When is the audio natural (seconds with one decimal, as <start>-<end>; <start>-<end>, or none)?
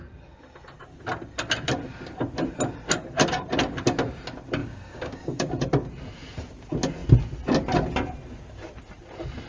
0.0-4.6; 5.5-9.5